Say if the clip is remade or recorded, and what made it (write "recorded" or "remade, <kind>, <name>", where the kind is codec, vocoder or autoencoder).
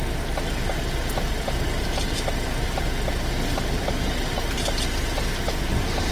recorded